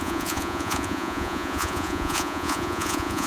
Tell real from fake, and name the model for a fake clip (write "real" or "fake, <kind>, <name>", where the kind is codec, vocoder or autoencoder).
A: fake, vocoder, Vocos